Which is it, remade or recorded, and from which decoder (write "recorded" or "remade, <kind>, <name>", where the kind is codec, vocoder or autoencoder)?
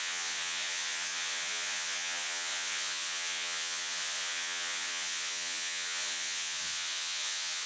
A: remade, vocoder, Vocos